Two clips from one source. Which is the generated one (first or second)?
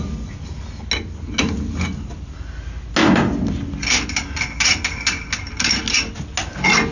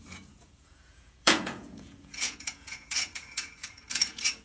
second